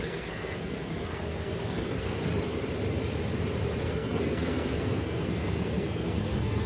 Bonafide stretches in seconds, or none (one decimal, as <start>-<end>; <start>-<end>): 2.2-3.8